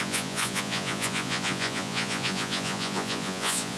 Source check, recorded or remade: remade